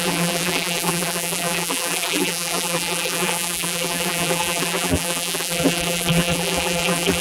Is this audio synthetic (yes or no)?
yes